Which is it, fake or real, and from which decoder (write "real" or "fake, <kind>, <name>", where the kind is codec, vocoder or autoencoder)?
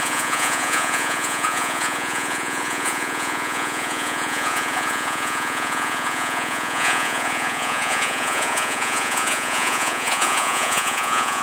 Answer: fake, vocoder, Vocos